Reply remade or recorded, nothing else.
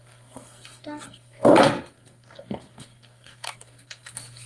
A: remade